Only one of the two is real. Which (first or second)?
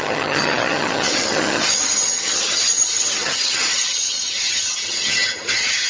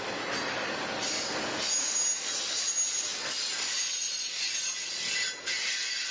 second